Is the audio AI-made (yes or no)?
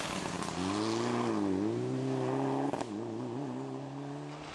no